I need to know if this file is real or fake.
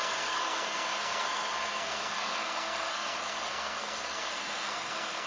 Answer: fake